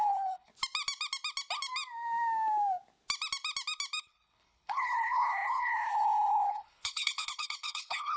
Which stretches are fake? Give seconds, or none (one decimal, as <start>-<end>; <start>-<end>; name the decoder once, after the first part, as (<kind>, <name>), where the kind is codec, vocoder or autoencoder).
0.0-0.5 (codec, HILCodec); 4.0-8.2